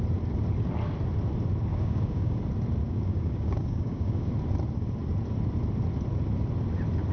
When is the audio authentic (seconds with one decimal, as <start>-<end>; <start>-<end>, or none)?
0.0-1.7; 2.4-2.8; 4.3-7.1